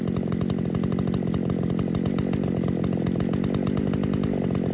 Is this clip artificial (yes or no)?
no